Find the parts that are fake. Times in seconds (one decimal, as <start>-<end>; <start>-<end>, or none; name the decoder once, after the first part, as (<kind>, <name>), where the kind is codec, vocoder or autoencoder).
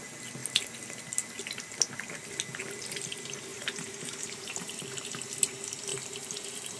3.5-4.8 (vocoder, BigVGAN v2); 5.9-6.8